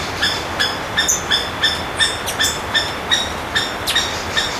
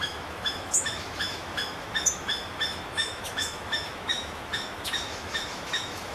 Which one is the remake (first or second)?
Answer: second